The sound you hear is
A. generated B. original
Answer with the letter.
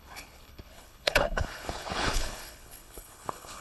A